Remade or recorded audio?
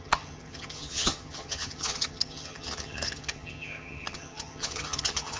remade